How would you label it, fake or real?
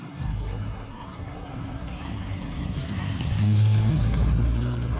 fake